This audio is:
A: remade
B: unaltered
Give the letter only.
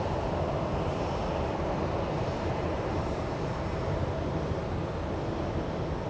B